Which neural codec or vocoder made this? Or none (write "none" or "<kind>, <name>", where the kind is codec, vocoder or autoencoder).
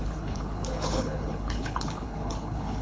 codec, HILCodec